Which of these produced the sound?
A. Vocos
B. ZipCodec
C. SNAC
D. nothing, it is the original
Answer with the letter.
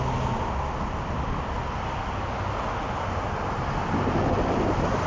D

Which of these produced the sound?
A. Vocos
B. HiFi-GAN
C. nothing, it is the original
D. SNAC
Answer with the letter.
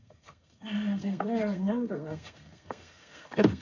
D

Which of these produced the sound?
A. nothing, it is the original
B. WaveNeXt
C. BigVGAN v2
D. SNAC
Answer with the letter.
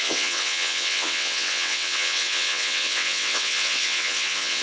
B